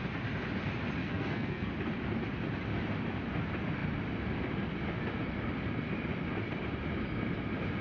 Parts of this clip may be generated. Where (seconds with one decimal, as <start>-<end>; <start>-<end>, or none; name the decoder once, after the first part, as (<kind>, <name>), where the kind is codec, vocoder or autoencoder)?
1.0-1.7 (codec, SNAC)